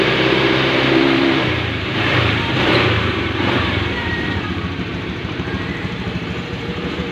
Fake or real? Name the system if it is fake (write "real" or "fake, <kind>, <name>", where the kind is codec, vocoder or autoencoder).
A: fake, vocoder, BigVGAN v2